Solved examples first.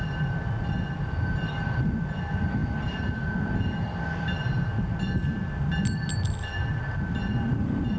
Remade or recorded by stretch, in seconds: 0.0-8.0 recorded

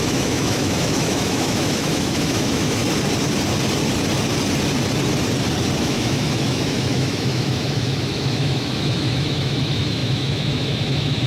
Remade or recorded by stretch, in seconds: 0.0-2.8 remade; 2.8-5.8 recorded; 5.8-11.3 remade

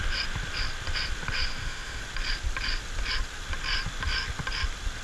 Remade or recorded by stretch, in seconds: 0.0-1.5 recorded; 1.5-2.0 remade; 2.0-5.0 recorded

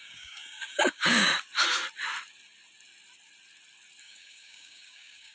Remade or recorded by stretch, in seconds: 0.0-1.3 remade; 1.3-4.0 recorded; 4.0-5.3 remade

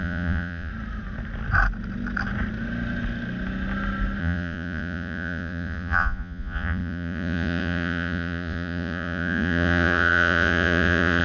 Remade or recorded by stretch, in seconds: 0.0-0.7 remade; 0.7-4.2 recorded; 4.2-11.2 remade

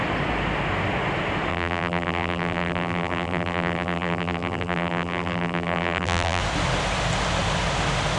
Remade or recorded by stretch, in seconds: 0.0-1.5 recorded; 1.5-6.4 remade; 6.4-8.2 recorded

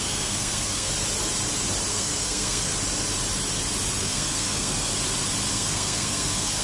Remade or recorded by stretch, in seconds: 0.0-0.9 remade; 0.9-1.9 recorded; 1.9-2.7 remade; 2.7-4.0 recorded; 4.0-4.9 remade; 4.9-5.5 recorded; 5.5-6.6 remade

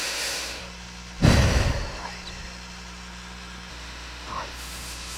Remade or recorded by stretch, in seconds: 0.0-0.6 remade; 0.6-3.7 recorded; 3.7-5.2 remade